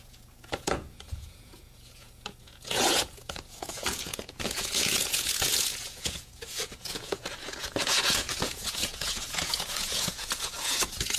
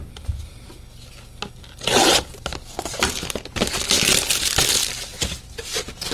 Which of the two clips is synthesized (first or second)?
first